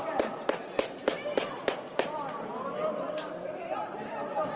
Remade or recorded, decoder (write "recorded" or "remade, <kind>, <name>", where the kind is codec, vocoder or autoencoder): recorded